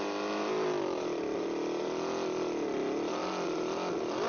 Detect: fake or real real